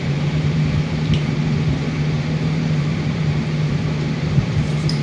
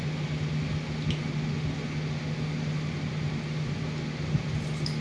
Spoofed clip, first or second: first